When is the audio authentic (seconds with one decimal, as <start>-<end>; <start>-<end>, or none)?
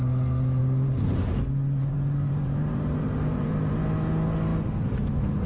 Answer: 0.0-0.6; 3.8-5.5